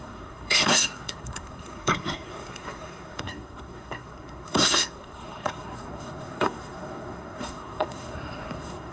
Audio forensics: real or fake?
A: fake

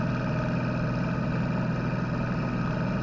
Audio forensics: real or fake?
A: real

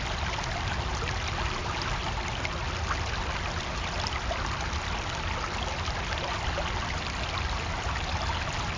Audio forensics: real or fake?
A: real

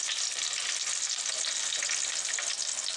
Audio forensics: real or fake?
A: real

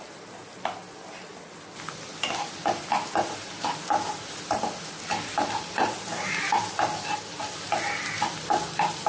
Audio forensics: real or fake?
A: real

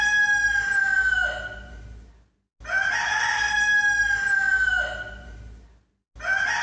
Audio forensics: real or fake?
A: real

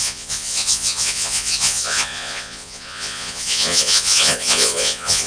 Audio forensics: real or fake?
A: fake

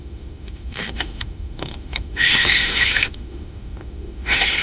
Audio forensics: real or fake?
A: fake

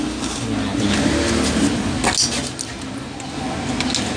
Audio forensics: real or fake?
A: real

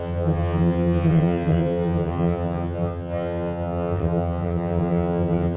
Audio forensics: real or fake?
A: fake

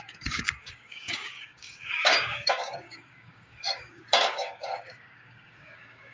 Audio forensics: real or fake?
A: fake